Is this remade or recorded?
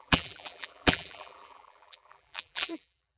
remade